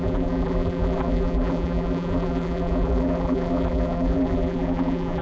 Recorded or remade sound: remade